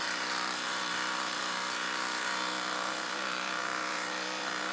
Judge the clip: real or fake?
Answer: fake